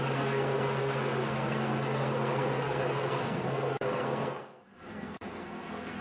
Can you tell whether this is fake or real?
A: fake